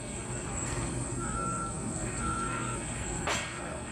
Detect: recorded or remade remade